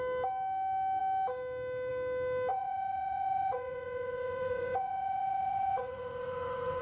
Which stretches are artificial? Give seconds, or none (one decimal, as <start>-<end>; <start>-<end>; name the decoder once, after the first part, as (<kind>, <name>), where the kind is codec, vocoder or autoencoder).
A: 2.5-6.8 (vocoder, Vocos)